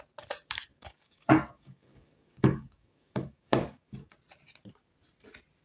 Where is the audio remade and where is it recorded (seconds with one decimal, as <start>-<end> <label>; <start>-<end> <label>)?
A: 0.0-0.7 recorded; 0.7-4.1 remade; 4.1-5.6 recorded